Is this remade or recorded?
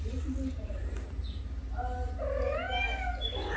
recorded